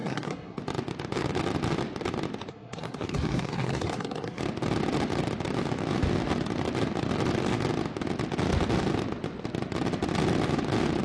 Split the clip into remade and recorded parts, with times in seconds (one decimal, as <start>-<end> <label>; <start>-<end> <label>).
0.0-0.6 remade; 0.6-2.5 recorded; 2.5-4.4 remade; 4.4-11.0 recorded